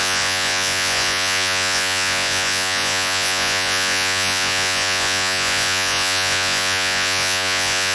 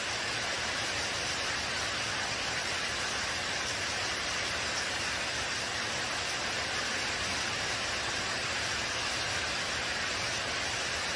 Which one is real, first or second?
second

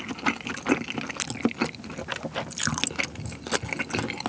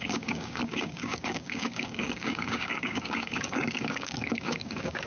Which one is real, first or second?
first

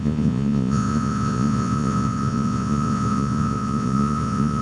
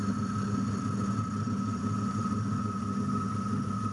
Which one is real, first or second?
second